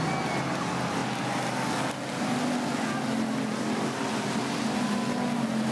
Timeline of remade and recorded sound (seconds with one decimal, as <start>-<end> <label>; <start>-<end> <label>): 0.0-5.7 recorded